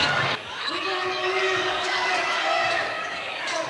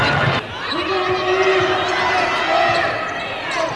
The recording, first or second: second